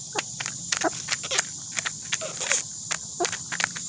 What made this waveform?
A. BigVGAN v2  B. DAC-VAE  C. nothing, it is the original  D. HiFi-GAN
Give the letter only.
A